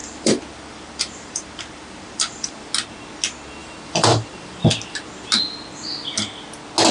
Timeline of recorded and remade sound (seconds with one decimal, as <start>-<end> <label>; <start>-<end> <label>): 0.0-2.6 remade; 2.6-3.6 recorded; 3.6-4.7 remade; 4.7-6.9 recorded